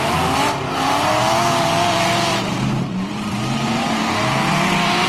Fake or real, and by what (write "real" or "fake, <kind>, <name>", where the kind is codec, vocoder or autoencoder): fake, vocoder, BigVGAN v2